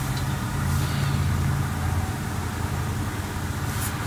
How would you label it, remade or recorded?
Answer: recorded